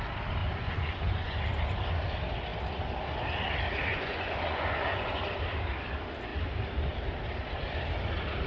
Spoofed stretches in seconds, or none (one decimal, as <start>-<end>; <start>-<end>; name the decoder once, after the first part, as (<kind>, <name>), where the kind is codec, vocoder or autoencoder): 0.4-1.4 (vocoder, Vocos); 3.9-5.2